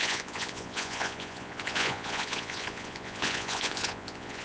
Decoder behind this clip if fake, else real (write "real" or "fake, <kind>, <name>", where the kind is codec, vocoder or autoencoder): fake, vocoder, Vocos